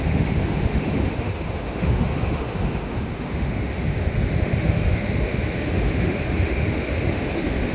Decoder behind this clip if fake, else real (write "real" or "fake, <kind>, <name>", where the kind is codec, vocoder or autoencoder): fake, autoencoder, DAC-VAE